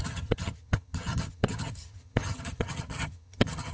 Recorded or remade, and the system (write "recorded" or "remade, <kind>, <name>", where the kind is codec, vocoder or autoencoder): remade, vocoder, HiFi-GAN